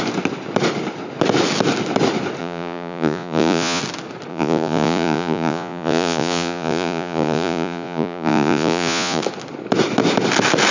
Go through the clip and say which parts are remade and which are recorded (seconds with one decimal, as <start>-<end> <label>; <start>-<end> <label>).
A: 0.0-2.4 recorded; 2.4-3.8 remade; 3.8-4.3 recorded; 4.3-9.2 remade; 9.2-10.7 recorded